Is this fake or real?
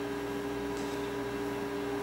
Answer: real